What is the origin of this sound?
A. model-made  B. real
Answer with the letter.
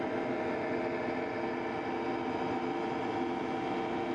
B